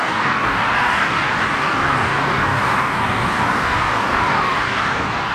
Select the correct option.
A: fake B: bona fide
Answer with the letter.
A